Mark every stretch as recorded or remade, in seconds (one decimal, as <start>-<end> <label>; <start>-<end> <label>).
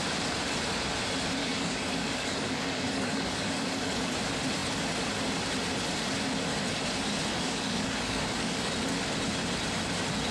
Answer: 0.0-1.4 recorded; 1.4-4.1 remade; 4.1-7.3 recorded; 7.3-8.7 remade; 8.7-10.3 recorded